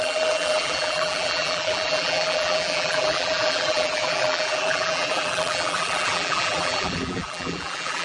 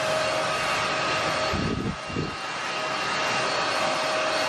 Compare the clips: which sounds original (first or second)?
second